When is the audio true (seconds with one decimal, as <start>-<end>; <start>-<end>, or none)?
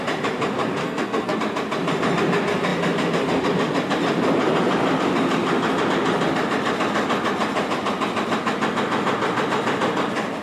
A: 0.0-0.8; 1.4-10.4